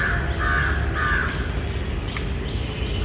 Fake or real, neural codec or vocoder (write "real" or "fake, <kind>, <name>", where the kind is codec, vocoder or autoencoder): real